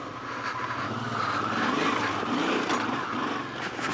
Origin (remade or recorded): recorded